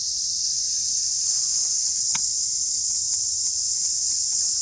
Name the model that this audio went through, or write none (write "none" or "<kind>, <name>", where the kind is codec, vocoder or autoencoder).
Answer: vocoder, WaveNeXt